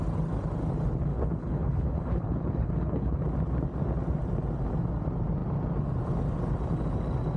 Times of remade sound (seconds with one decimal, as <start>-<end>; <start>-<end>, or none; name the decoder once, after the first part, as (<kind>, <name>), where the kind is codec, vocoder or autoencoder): 1.1-3.2 (codec, HILCodec)